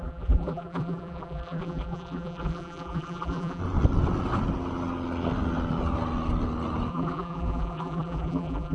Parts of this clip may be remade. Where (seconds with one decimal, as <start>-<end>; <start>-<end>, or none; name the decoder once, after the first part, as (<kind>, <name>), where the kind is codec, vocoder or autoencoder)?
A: 0.0-3.6 (vocoder, BigVGAN v2); 6.9-8.7